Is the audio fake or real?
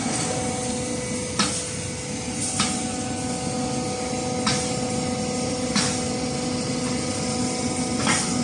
real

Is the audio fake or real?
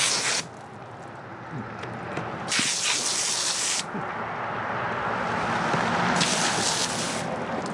real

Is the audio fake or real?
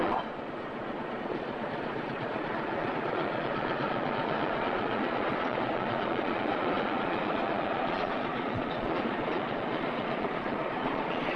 fake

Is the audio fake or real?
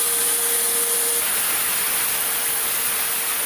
real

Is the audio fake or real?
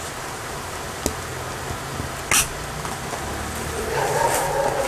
real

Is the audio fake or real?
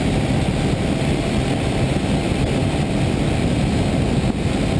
real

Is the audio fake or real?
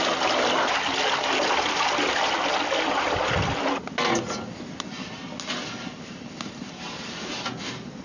real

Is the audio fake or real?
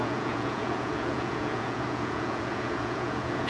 fake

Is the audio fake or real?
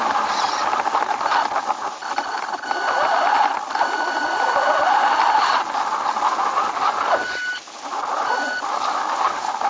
real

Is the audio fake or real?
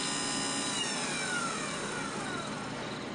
real